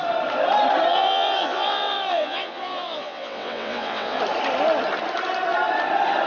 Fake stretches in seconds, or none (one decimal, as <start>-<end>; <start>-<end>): 0.9-4.2